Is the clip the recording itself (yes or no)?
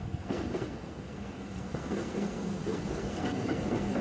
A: no